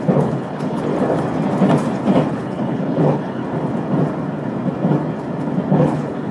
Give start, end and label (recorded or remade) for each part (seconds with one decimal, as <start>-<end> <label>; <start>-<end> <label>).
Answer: 0.0-0.9 remade; 0.9-2.3 recorded; 2.3-3.4 remade; 3.4-5.7 recorded; 5.7-6.3 remade